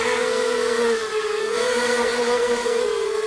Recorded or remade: remade